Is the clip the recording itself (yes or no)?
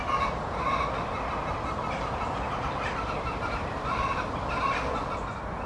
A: yes